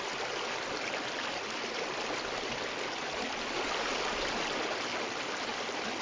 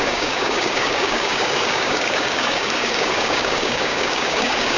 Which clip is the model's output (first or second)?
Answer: second